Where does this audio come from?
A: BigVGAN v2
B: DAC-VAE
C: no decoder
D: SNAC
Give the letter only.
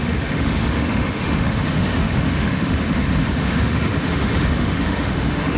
B